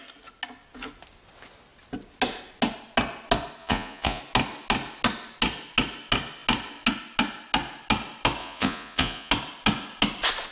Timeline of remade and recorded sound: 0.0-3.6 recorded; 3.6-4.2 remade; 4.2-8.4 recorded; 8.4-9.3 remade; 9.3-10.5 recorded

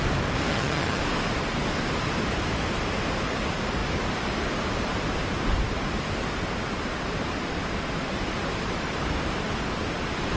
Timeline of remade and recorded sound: 0.0-0.5 recorded; 0.5-1.0 remade; 1.0-10.4 recorded

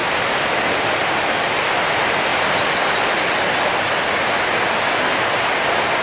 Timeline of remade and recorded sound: 0.0-6.0 recorded

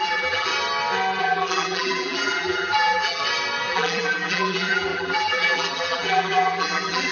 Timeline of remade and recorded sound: 0.0-0.5 remade; 0.5-1.2 recorded; 1.2-3.2 remade; 3.2-3.7 recorded; 3.7-7.1 remade

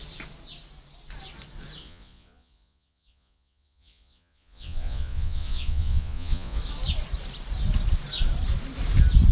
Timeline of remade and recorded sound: 0.0-1.8 recorded; 1.8-6.6 remade; 6.6-9.3 recorded

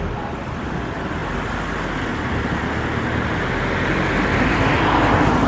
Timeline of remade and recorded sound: 0.0-5.5 recorded

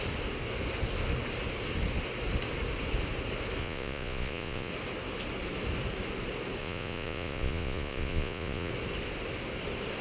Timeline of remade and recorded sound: 0.0-3.6 recorded; 3.6-4.7 remade; 4.7-6.6 recorded; 6.6-8.7 remade; 8.7-10.0 recorded

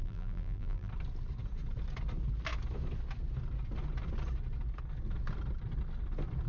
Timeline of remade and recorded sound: 0.0-0.9 remade; 0.9-6.5 recorded